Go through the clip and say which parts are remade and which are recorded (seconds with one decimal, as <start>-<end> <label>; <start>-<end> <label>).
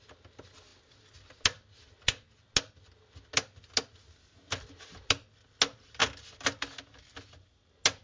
0.0-8.0 recorded